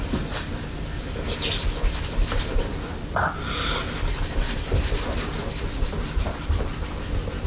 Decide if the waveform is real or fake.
real